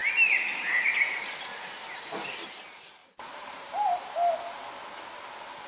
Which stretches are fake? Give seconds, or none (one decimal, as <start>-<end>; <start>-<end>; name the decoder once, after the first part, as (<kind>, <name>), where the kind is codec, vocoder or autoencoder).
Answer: 0.0-0.6 (vocoder, BigVGAN v2); 1.5-2.5; 3.0-4.3